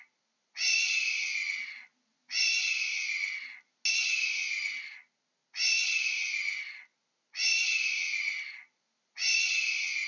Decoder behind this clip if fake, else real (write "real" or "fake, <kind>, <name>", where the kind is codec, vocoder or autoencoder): real